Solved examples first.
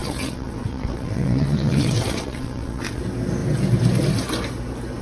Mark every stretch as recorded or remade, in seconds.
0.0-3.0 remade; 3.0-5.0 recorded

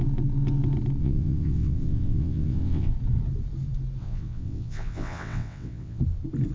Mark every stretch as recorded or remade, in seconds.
0.0-1.0 recorded; 1.0-2.9 remade; 2.9-4.0 recorded; 4.0-6.0 remade; 6.0-6.5 recorded

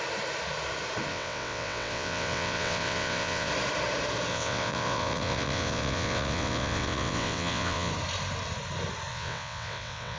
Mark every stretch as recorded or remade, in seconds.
0.0-1.1 recorded; 1.1-3.5 remade; 3.5-4.3 recorded; 4.3-7.9 remade; 7.9-9.1 recorded; 9.1-10.2 remade